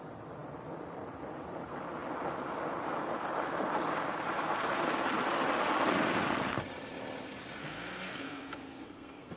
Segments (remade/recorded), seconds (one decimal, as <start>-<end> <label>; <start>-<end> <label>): 0.0-7.6 recorded; 7.6-9.4 remade